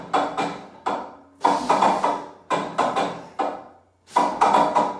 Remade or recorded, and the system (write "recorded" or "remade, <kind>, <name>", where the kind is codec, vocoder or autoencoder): recorded